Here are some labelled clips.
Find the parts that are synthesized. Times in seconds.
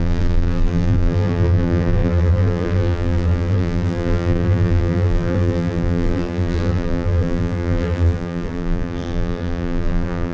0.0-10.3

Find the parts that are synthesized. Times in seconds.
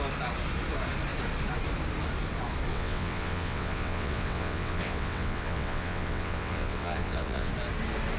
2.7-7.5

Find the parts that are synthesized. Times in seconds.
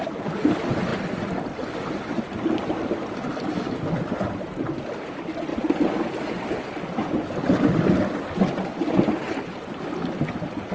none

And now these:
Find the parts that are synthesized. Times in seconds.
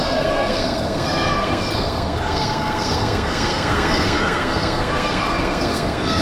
0.0-6.2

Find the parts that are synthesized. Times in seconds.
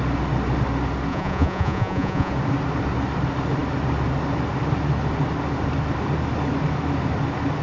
1.1-2.3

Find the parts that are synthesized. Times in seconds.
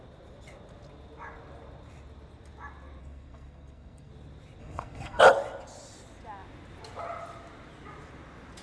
3.0-4.1; 4.6-5.2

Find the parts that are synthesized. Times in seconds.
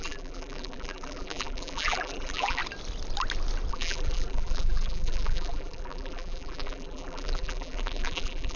0.0-2.6; 3.7-8.6